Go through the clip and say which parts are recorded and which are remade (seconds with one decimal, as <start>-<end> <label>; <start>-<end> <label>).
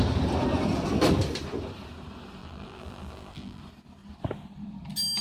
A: 0.0-2.4 recorded; 2.4-3.6 remade; 3.6-5.2 recorded